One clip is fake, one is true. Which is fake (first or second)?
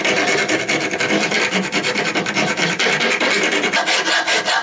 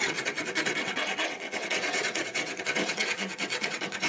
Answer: second